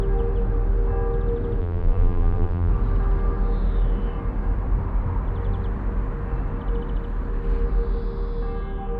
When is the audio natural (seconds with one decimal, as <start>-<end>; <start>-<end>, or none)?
0.0-1.6; 2.7-9.0

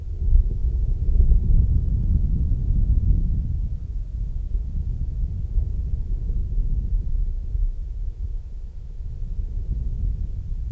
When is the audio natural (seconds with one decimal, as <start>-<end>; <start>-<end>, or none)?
0.0-0.6; 1.3-2.6; 3.4-6.4; 9.1-10.7

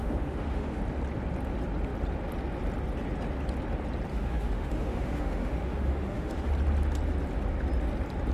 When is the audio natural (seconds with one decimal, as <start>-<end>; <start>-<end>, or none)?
0.8-4.1; 6.5-8.3

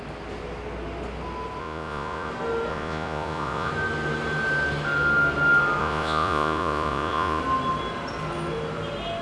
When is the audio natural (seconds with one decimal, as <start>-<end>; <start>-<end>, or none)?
0.0-1.6; 2.3-2.7; 3.7-5.8; 7.4-9.2

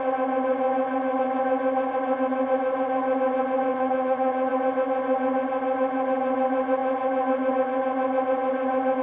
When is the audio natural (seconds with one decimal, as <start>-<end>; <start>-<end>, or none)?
0.0-3.7; 4.5-9.0

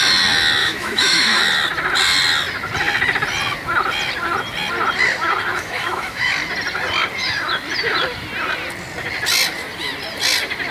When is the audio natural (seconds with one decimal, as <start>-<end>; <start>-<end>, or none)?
0.0-0.6; 1.4-5.5; 6.3-10.7

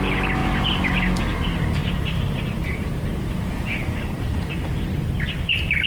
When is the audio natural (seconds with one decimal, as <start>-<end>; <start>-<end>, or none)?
0.0-1.8; 4.5-5.9